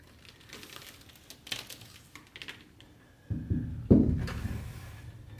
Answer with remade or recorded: recorded